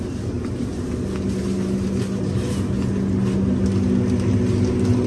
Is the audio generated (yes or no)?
no